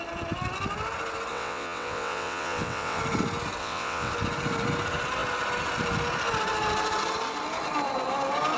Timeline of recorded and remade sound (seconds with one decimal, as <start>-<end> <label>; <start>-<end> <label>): 0.0-1.3 recorded; 1.3-3.0 remade; 3.0-3.6 recorded; 3.6-4.1 remade; 4.1-8.6 recorded

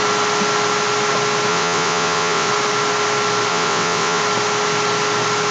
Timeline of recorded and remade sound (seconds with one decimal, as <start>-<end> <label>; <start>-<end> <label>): 0.0-1.5 recorded; 1.5-2.5 remade; 2.5-3.5 recorded; 3.5-4.2 remade; 4.2-5.5 recorded

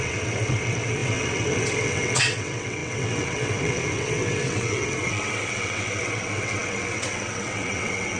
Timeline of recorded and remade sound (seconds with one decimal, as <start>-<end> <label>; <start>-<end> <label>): 0.0-8.2 remade